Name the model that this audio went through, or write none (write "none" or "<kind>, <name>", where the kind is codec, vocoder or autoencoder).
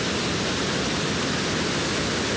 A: none